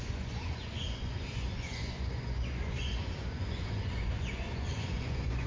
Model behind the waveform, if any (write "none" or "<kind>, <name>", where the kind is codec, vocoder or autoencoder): vocoder, Vocos